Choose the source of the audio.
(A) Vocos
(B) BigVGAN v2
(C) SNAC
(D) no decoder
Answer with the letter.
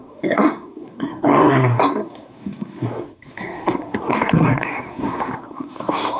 C